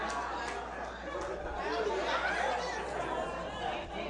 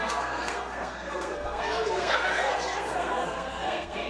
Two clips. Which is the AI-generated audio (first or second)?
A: second